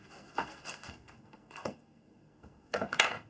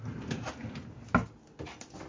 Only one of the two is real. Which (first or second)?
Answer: second